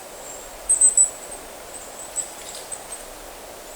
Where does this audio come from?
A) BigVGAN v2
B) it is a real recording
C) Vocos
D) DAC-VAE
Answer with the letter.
B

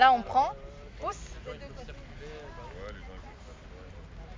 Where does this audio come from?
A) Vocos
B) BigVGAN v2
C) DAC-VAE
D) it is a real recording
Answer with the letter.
D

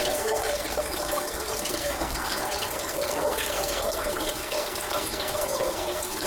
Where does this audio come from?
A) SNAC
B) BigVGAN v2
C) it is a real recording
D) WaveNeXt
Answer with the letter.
A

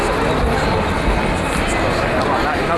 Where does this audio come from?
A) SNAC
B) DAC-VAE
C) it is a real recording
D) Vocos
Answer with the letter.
C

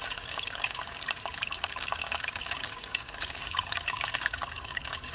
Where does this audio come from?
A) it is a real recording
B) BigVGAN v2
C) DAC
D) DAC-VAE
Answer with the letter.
C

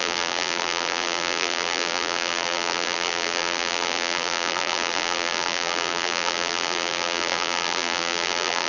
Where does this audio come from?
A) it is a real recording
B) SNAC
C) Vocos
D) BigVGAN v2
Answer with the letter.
D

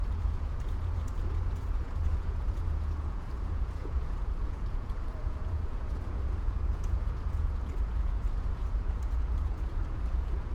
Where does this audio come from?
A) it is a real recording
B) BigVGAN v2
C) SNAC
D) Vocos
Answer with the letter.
D